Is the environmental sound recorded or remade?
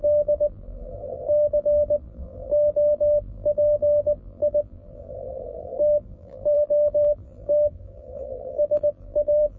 remade